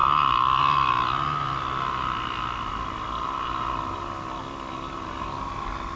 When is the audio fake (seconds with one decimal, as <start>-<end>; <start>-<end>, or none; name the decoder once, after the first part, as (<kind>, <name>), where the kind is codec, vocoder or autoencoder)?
none